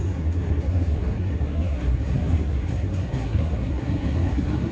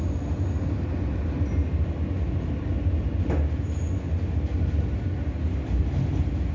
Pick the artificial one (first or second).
first